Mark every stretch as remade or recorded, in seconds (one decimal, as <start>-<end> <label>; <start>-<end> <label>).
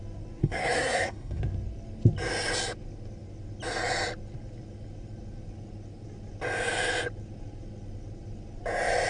0.0-0.4 recorded; 0.4-1.4 remade; 1.4-9.1 recorded